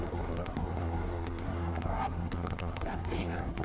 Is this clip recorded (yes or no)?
no